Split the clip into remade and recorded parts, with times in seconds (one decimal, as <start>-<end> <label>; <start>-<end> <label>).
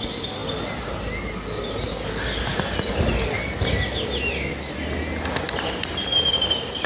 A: 0.0-6.9 recorded